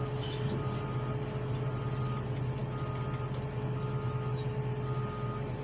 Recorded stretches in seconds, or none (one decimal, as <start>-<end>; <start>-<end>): 0.0-5.6